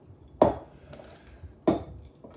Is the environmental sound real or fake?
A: real